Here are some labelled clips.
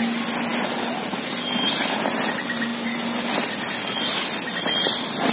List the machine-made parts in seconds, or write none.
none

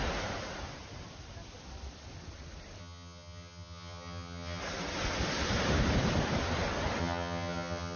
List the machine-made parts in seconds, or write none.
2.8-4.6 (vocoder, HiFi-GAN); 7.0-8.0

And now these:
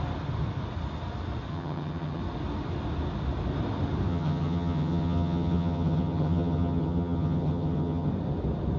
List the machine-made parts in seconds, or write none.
1.5-2.2 (vocoder, HiFi-GAN); 4.1-8.1

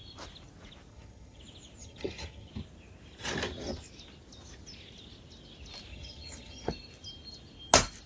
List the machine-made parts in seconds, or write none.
0.9-1.4 (vocoder, HiFi-GAN); 1.8-2.5; 5.9-6.7

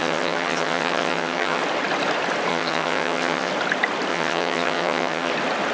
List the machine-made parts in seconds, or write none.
0.0-1.6 (vocoder, HiFi-GAN); 2.5-3.5; 4.1-5.3

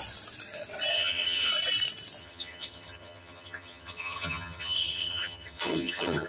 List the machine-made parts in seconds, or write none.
0.9-1.5 (vocoder, HiFi-GAN); 2.2-6.3